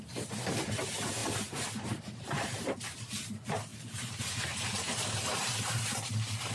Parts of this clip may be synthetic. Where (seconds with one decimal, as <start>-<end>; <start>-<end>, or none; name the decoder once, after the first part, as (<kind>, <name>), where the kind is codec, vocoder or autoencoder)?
0.0-1.2 (vocoder, BigVGAN v2); 1.9-6.5